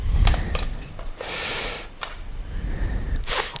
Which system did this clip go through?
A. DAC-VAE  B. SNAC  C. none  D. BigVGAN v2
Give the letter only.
D